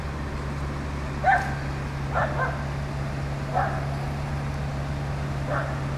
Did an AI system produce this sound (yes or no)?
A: no